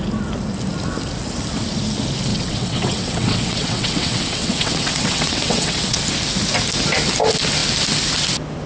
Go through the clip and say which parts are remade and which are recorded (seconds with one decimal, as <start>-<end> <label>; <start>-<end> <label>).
0.0-2.3 recorded; 2.3-6.0 remade; 6.0-8.7 recorded